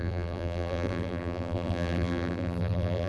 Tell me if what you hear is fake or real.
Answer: fake